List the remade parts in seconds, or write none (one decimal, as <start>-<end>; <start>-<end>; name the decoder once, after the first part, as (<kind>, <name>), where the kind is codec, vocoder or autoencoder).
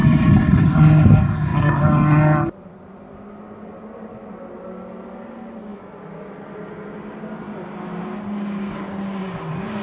0.0-0.6 (vocoder, BigVGAN v2)